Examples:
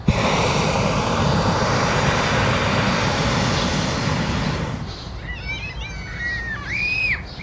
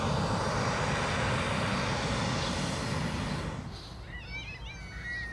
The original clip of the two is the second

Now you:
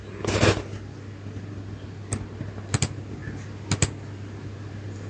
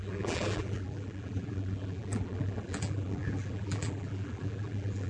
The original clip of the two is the first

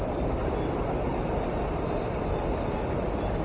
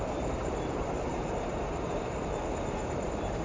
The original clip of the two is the first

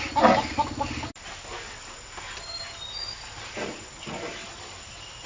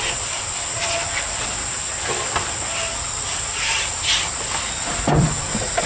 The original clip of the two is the first